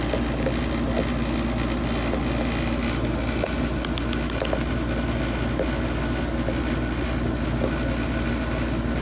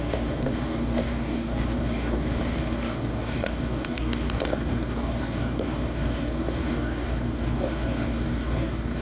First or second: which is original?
first